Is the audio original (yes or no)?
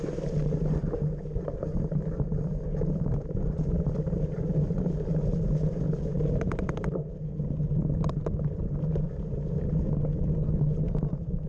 yes